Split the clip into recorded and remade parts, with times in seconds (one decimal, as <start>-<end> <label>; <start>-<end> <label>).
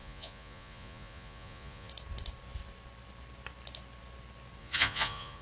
0.0-1.9 remade; 1.9-4.6 recorded; 4.6-5.4 remade